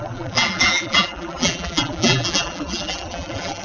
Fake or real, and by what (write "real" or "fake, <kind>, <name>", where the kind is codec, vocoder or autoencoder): fake, vocoder, BigVGAN v2